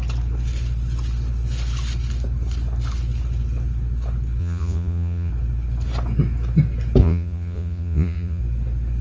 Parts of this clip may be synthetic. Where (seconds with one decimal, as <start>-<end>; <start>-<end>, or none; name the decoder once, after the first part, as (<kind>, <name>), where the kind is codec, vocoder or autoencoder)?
4.4-5.3 (vocoder, Vocos); 7.0-8.4